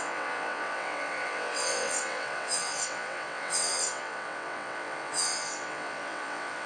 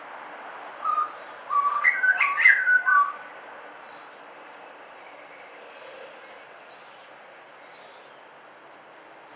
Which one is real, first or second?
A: second